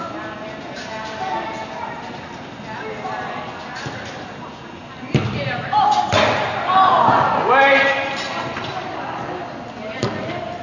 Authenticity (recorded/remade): recorded